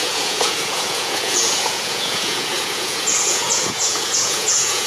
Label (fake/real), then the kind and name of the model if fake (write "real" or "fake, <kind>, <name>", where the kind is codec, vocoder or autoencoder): fake, vocoder, Vocos